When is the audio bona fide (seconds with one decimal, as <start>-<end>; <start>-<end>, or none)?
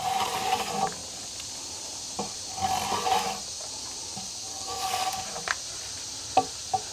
0.0-4.5; 5.1-6.9